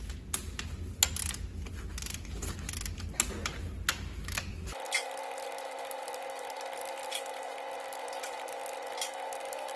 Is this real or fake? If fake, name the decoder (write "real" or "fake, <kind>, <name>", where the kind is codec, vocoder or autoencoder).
real